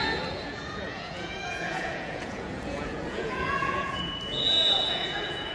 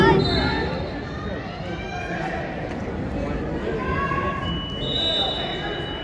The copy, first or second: first